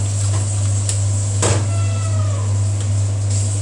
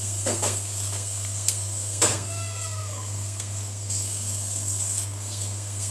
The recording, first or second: first